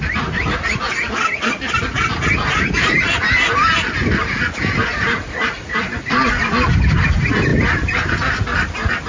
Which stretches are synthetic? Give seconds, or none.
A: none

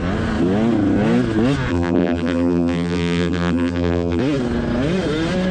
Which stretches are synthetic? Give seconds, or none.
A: 1.7-4.2 (vocoder, BigVGAN v2)

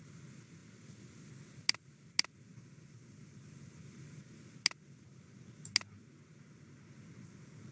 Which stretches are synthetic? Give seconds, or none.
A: none

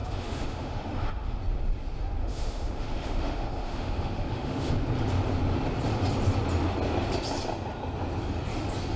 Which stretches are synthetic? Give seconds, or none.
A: 0.0-1.4 (autoencoder, DAC-VAE); 2.2-4.7

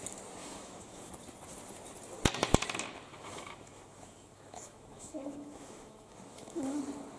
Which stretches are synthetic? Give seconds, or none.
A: 0.4-1.1 (autoencoder, DAC-VAE); 3.1-6.8

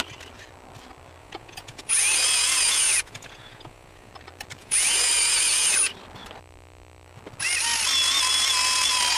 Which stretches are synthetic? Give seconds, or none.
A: 1.2-4.1 (vocoder, Vocos); 4.6-5.9

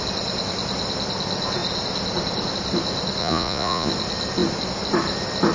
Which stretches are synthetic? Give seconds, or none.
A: 3.2-3.9 (vocoder, Vocos)

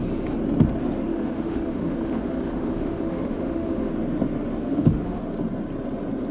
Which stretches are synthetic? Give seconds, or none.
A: 1.1-3.9 (autoencoder, DAC-VAE); 4.6-5.2